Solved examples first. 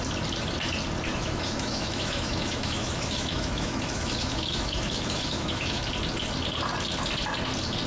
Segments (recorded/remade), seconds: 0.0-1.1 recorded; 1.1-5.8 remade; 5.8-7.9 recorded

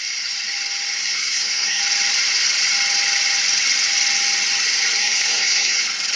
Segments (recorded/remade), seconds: 0.0-1.0 recorded; 1.0-1.8 remade; 1.8-5.0 recorded; 5.0-5.8 remade; 5.8-6.2 recorded

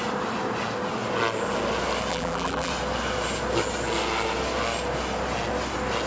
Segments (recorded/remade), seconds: 0.0-2.1 recorded; 2.1-2.7 remade; 2.7-6.1 recorded

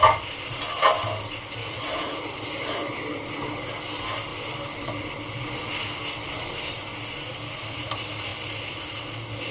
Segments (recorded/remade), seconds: 0.0-1.6 recorded; 1.6-2.6 remade; 2.6-8.3 recorded; 8.3-9.0 remade; 9.0-9.5 recorded

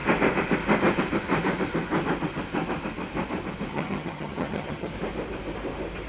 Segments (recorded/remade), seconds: 0.0-3.7 recorded; 3.7-4.9 remade; 4.9-6.1 recorded

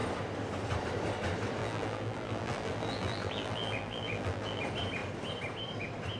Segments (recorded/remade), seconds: 0.0-1.6 recorded; 1.6-4.6 remade; 4.6-6.2 recorded

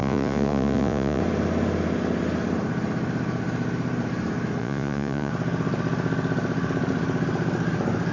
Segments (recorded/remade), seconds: 0.0-1.2 remade; 1.2-4.6 recorded; 4.6-5.3 remade; 5.3-8.1 recorded

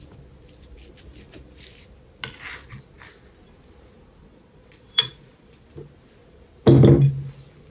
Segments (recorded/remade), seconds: 0.0-4.2 recorded; 4.2-5.6 remade; 5.6-7.7 recorded